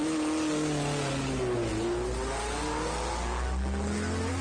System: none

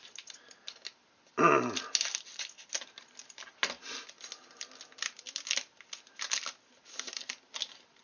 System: none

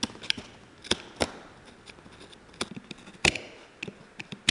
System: none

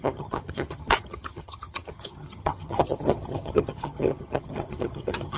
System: vocoder, HiFi-GAN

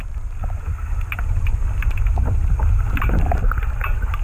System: none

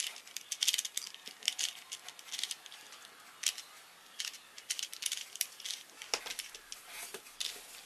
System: none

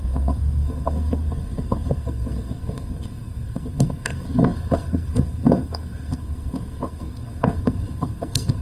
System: codec, SNAC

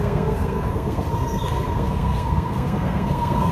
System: codec, SNAC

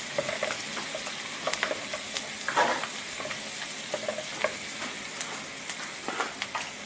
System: none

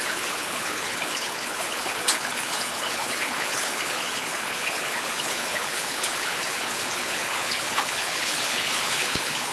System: codec, HILCodec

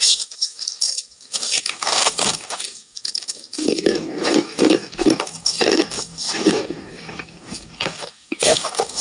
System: codec, DAC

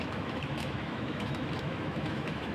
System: autoencoder, DAC-VAE